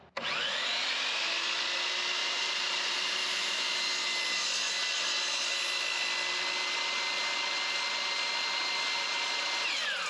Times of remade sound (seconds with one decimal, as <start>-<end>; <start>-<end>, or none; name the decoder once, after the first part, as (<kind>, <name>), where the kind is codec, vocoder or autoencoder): 2.2-3.6 (vocoder, BigVGAN v2)